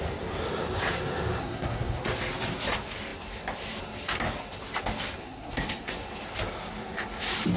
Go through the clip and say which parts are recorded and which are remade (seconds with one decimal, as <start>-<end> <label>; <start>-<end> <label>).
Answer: 0.0-1.4 recorded; 1.4-2.0 remade; 2.0-5.2 recorded; 5.2-5.9 remade; 5.9-7.6 recorded